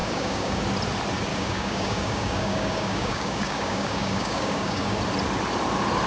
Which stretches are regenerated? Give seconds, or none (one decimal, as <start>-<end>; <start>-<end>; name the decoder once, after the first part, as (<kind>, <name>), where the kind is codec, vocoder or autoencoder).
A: 0.0-0.6 (codec, DAC); 1.3-5.0